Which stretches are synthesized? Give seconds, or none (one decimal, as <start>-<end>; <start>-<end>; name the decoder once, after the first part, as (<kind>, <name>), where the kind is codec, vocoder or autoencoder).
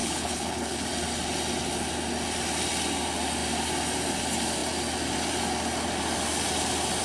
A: 0.0-0.9 (codec, HILCodec)